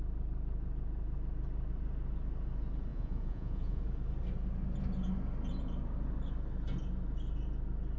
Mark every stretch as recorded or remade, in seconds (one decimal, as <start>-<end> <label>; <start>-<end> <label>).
0.0-2.9 recorded; 2.9-3.8 remade; 3.8-8.0 recorded